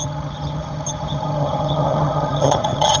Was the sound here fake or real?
fake